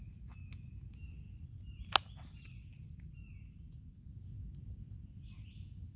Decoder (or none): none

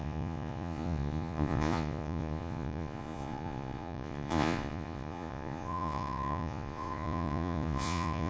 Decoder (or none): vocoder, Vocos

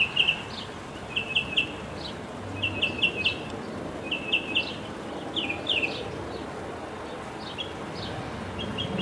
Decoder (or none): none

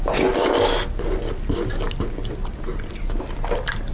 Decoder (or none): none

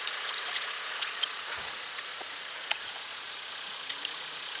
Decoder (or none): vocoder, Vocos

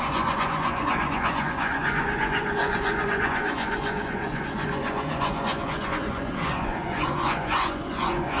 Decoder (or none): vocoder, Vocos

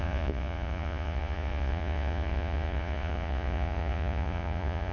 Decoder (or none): vocoder, Vocos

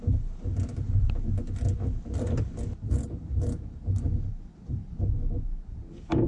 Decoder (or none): none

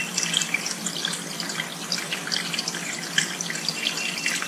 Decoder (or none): none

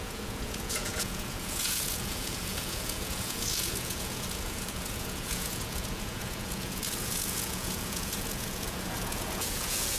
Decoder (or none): vocoder, Vocos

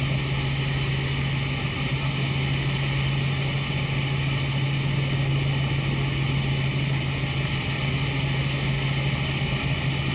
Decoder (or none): none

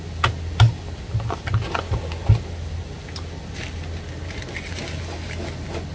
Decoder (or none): none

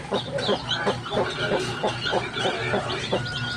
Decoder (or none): none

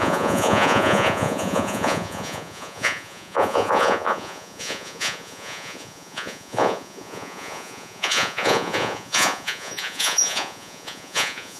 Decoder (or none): vocoder, Vocos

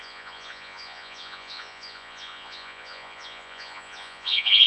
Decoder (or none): vocoder, Vocos